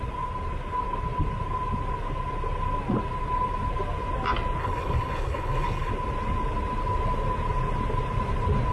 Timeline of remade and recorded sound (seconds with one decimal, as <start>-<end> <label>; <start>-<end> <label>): 0.0-4.6 recorded; 4.6-5.9 remade; 5.9-8.7 recorded